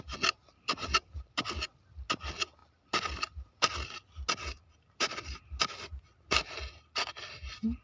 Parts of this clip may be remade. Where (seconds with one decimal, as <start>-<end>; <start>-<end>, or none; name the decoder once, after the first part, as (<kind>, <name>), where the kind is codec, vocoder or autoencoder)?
none